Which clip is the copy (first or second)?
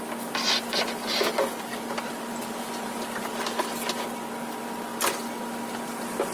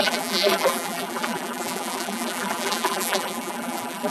second